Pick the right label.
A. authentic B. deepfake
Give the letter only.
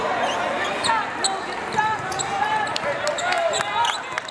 A